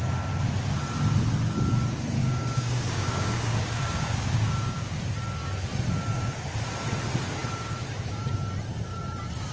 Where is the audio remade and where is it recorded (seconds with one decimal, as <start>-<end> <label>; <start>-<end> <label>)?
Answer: 0.0-2.2 recorded; 2.2-4.9 remade; 4.9-9.5 recorded